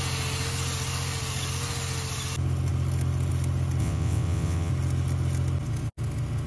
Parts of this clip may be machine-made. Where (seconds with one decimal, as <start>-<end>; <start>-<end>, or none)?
3.8-4.7